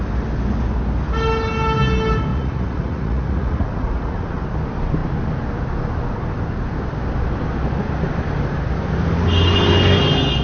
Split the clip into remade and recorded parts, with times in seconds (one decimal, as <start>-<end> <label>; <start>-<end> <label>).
0.0-2.3 recorded; 2.3-4.4 remade; 4.4-10.4 recorded